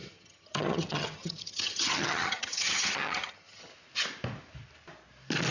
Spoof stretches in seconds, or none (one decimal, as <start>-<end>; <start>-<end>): 0.0-3.7

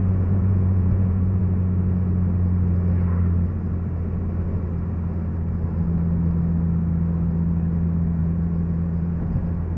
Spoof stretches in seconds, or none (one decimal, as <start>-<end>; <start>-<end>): 0.0-1.4; 8.2-9.4

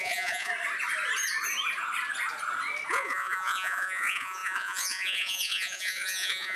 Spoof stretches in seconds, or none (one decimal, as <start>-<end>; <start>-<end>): 0.0-0.5; 2.9-6.6

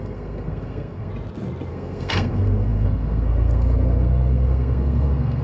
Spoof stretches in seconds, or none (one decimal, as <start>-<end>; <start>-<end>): 0.0-1.1; 1.7-5.4

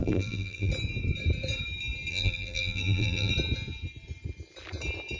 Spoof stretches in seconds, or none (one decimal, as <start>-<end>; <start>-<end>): 0.0-0.7; 2.1-3.3

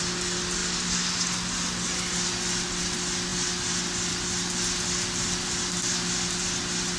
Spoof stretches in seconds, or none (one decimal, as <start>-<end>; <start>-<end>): none